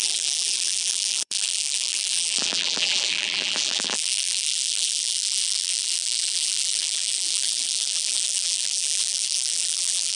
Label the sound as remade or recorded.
remade